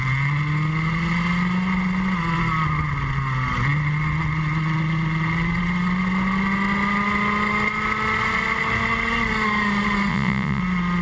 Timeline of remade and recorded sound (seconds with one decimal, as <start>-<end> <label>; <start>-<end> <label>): 0.0-10.1 recorded; 10.1-10.6 remade; 10.6-11.0 recorded